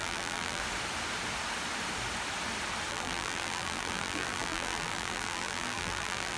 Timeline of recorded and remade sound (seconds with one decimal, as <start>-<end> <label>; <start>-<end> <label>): 0.0-0.6 remade; 0.6-2.9 recorded; 2.9-6.4 remade

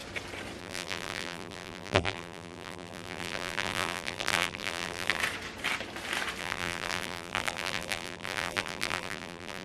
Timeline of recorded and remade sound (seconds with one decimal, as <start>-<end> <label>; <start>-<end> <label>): 0.0-0.6 recorded; 0.6-5.2 remade; 5.2-6.4 recorded; 6.4-9.6 remade

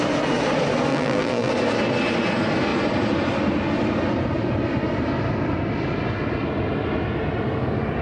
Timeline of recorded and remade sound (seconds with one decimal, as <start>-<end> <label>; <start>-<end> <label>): 0.0-0.9 recorded; 0.9-1.5 remade; 1.5-8.0 recorded

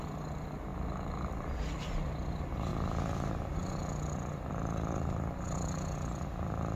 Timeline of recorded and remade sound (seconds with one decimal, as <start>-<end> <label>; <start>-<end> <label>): 0.0-6.8 recorded

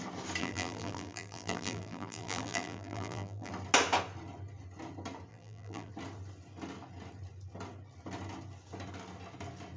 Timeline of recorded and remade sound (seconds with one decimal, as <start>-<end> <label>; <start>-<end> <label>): 0.0-0.4 recorded; 0.4-3.5 remade; 3.5-5.3 recorded; 5.3-5.9 remade; 5.9-9.8 recorded